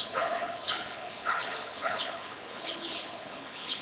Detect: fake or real fake